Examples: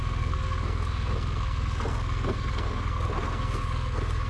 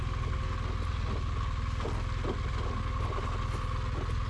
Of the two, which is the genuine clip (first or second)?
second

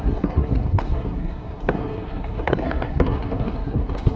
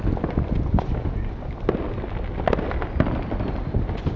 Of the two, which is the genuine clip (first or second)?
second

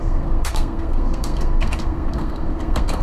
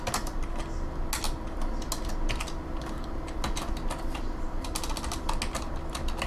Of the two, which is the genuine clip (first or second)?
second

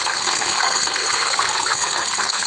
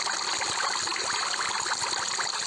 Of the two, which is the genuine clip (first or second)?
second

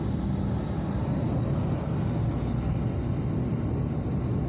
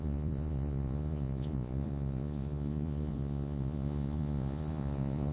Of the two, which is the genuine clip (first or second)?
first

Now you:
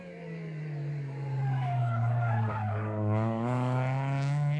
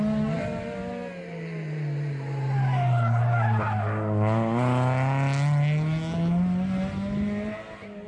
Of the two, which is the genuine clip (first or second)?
second